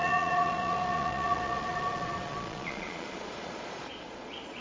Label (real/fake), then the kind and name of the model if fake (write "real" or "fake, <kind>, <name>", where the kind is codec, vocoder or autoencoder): fake, vocoder, Vocos